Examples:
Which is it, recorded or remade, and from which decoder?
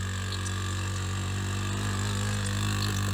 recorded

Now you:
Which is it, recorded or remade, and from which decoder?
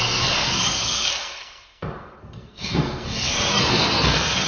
remade, codec, SNAC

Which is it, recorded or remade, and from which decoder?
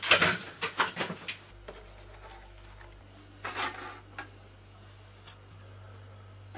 recorded